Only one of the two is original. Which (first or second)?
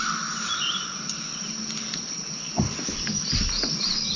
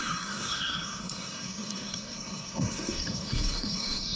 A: first